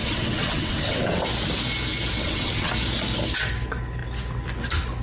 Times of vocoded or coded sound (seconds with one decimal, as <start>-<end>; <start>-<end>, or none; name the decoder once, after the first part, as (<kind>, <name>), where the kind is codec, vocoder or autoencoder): 0.0-1.2 (vocoder, WaveNeXt); 2.2-2.7